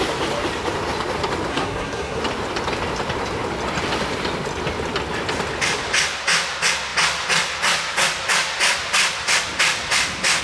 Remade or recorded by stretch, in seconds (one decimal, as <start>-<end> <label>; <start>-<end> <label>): 0.0-1.5 recorded; 1.5-2.2 remade; 2.2-10.4 recorded